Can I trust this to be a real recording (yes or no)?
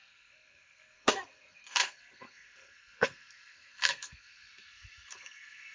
no